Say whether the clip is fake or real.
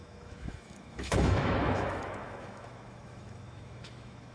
fake